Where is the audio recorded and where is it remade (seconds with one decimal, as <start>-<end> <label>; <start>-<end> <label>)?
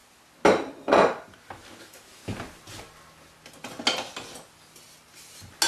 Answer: 0.0-1.8 recorded; 1.8-2.2 remade; 2.2-5.7 recorded